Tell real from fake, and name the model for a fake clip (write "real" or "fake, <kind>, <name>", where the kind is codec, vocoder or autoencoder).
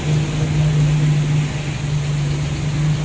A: real